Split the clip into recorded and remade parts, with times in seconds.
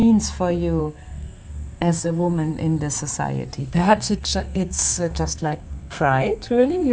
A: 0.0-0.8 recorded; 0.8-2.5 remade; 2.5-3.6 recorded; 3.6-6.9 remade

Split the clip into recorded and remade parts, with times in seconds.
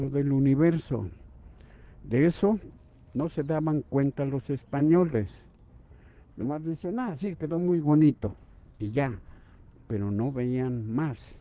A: 0.0-4.8 recorded; 4.8-9.6 remade; 9.6-11.4 recorded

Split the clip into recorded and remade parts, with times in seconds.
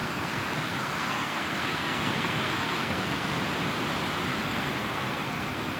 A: 0.0-3.4 remade; 3.4-4.3 recorded; 4.3-5.8 remade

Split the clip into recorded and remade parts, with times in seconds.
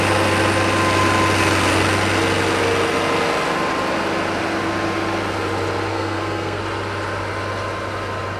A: 0.0-5.9 recorded; 5.9-6.6 remade; 6.6-8.4 recorded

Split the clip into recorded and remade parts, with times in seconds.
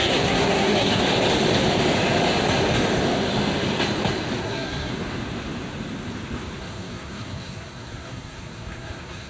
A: 0.0-1.0 remade; 1.0-4.4 recorded; 4.4-4.9 remade; 4.9-6.6 recorded; 6.6-9.3 remade